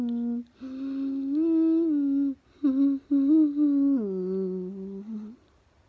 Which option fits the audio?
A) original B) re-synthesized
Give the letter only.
A